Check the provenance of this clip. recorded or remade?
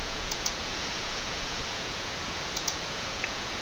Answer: remade